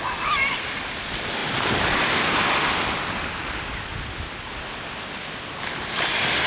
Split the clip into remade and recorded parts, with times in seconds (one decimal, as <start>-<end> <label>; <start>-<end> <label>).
0.0-6.5 recorded

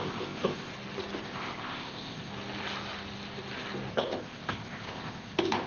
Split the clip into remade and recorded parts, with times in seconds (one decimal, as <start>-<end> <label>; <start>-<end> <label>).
0.0-0.7 remade; 0.7-1.2 recorded; 1.2-2.3 remade; 2.3-3.9 recorded; 3.9-5.7 remade

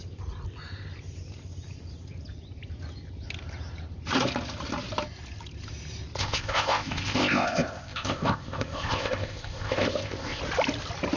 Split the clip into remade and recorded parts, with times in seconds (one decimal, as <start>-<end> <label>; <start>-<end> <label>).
0.0-6.2 recorded; 6.2-10.4 remade; 10.4-11.2 recorded